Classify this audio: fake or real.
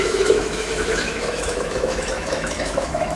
fake